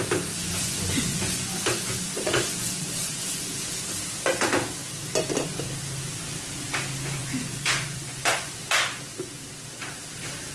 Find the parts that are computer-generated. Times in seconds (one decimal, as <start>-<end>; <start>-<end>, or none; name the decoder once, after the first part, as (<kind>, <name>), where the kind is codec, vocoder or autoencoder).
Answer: 0.4-3.7 (vocoder, Vocos); 7.2-8.6